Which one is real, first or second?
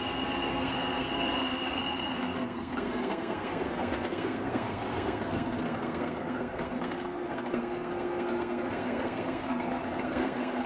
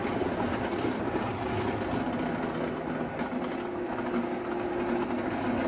second